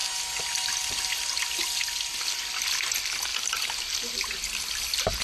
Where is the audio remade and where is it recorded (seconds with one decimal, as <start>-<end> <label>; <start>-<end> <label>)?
0.0-5.2 recorded